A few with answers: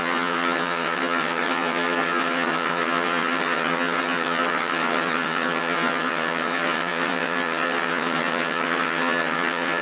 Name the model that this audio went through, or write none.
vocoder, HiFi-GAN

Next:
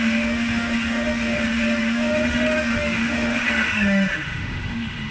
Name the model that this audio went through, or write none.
autoencoder, DAC-VAE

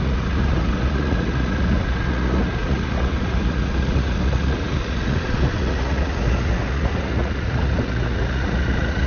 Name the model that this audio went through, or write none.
vocoder, Vocos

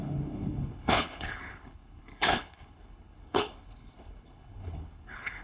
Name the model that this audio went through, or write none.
codec, HILCodec